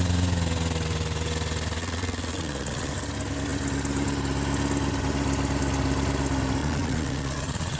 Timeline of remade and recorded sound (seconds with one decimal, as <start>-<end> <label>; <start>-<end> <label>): 0.0-1.8 recorded; 1.8-2.9 remade; 2.9-6.6 recorded; 6.6-7.8 remade